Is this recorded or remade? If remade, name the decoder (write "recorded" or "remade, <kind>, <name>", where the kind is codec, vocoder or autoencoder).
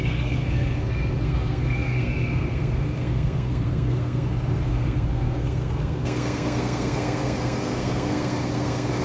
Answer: remade, codec, SNAC